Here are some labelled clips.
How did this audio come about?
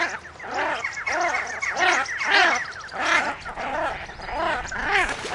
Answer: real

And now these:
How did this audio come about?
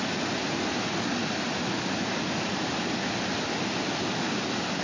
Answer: real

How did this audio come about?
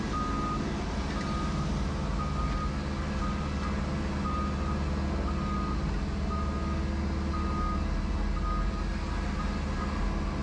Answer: real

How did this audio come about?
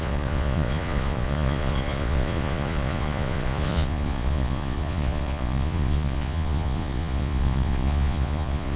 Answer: fake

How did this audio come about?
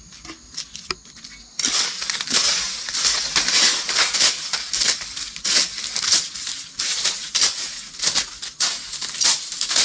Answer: real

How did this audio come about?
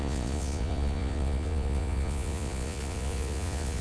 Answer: fake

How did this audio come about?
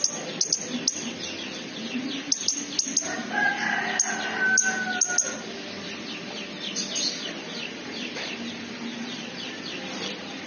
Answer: real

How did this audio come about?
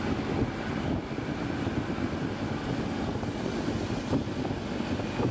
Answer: real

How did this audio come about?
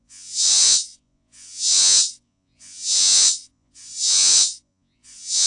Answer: fake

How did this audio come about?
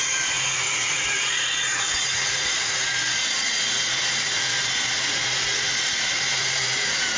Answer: fake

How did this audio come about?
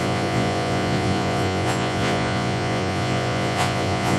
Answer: fake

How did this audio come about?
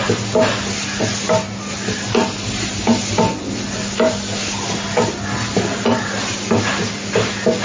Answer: real